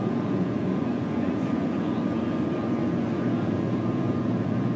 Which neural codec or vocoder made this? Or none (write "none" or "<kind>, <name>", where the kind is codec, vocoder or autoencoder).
vocoder, Vocos